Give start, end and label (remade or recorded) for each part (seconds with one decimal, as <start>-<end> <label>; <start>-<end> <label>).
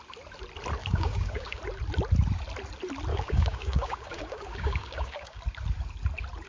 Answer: 0.0-0.8 recorded; 0.8-1.6 remade; 1.6-3.1 recorded; 3.1-5.4 remade; 5.4-6.5 recorded